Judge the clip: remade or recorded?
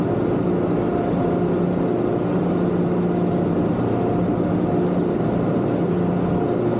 recorded